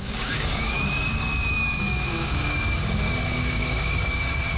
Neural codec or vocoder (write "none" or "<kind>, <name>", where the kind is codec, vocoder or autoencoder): codec, DAC